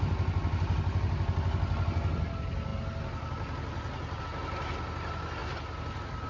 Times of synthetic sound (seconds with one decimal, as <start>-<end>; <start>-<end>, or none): none